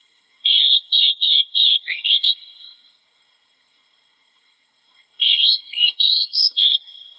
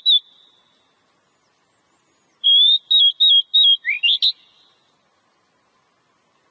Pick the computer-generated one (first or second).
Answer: first